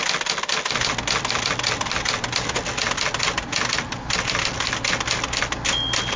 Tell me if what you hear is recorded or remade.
recorded